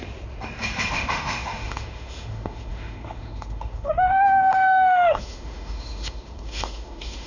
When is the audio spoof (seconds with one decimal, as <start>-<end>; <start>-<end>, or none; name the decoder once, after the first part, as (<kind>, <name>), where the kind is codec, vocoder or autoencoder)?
0.9-7.3 (autoencoder, DAC-VAE)